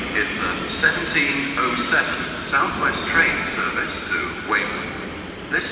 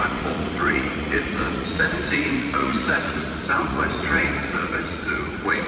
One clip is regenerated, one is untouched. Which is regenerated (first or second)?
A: second